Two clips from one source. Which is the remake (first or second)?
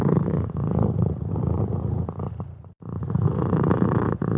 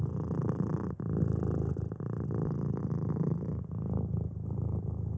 first